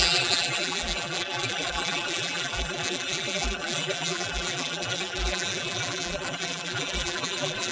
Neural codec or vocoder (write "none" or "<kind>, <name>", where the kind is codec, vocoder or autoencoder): vocoder, BigVGAN v2